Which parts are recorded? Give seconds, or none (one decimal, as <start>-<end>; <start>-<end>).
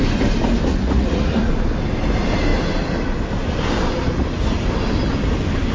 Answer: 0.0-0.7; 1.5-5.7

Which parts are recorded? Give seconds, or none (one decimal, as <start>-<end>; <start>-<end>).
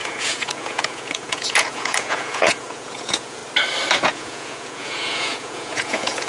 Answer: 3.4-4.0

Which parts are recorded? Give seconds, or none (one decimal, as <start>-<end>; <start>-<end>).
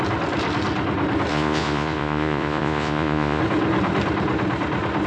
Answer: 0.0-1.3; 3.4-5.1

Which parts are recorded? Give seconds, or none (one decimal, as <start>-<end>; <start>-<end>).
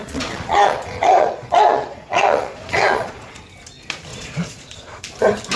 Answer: 3.4-4.1; 5.0-5.6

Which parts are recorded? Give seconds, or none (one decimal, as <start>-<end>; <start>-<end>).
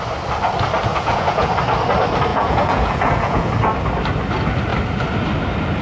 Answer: 0.0-0.9; 1.5-2.3; 3.5-5.8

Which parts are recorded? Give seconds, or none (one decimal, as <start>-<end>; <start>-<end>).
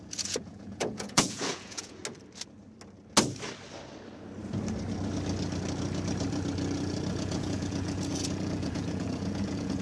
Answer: 2.0-7.1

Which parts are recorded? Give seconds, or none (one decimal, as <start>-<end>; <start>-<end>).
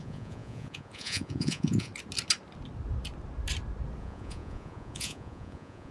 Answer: 1.9-4.0